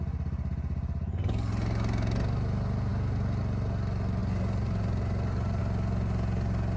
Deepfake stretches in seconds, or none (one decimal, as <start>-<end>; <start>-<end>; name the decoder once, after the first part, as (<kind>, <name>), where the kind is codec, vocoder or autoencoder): 4.2-5.6 (vocoder, BigVGAN v2)